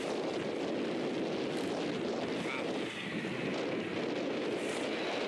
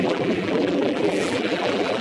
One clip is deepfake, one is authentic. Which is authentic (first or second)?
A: first